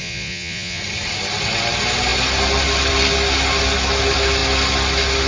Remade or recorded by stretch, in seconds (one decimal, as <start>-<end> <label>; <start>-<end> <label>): 0.0-0.8 remade; 0.8-5.3 recorded